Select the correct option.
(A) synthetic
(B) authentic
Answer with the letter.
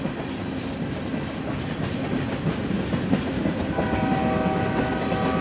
B